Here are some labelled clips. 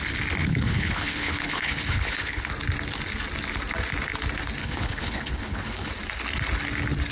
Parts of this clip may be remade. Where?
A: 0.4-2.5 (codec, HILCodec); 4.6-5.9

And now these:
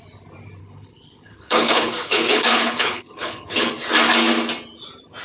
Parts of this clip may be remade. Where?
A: 0.6-3.7 (codec, HILCodec)

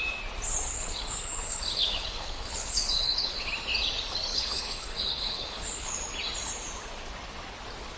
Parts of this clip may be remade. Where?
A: 0.7-3.5 (codec, HILCodec); 4.3-6.0

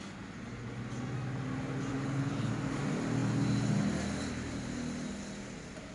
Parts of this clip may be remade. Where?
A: 1.9-2.5 (codec, HILCodec)

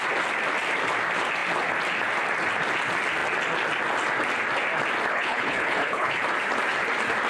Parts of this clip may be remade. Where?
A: 5.1-6.1 (codec, HILCodec)

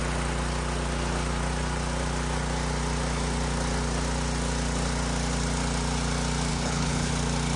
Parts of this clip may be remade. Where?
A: 6.5-7.1 (codec, HILCodec)

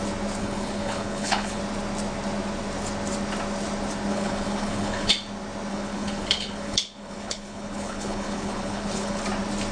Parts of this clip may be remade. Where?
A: 0.4-1.6 (codec, HILCodec); 4.1-5.1; 5.7-9.2

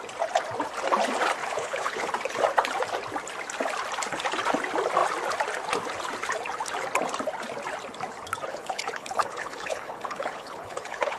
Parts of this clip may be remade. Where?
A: 1.4-2.1 (codec, HILCodec); 8.5-11.2